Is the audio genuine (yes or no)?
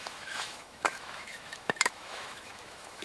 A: no